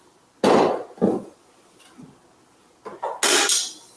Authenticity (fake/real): real